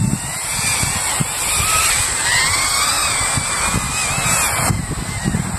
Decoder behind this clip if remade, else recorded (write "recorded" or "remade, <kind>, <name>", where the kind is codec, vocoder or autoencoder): recorded